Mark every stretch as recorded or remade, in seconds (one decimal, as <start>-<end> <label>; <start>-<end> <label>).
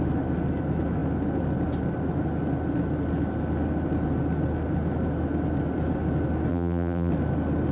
0.0-6.5 recorded; 6.5-7.1 remade; 7.1-7.7 recorded